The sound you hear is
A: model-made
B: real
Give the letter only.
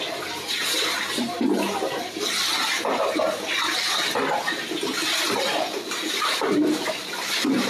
B